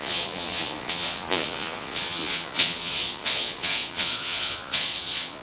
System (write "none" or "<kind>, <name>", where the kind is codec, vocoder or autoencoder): vocoder, Vocos